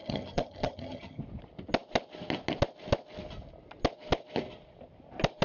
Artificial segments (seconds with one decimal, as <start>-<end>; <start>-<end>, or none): 0.0-1.2